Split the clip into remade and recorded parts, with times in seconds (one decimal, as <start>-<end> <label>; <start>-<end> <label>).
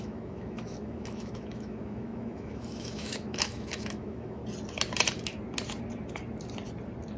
0.0-4.4 remade; 4.4-7.2 recorded